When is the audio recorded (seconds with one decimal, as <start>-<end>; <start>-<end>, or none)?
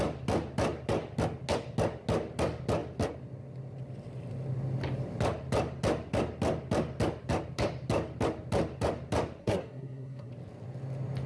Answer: 0.0-9.4; 10.3-11.3